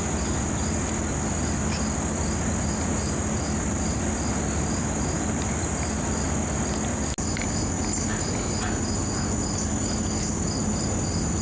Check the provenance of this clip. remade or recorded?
recorded